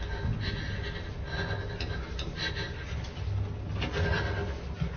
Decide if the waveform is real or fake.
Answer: real